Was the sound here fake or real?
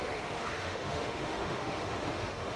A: fake